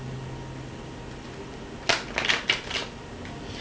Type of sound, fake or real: real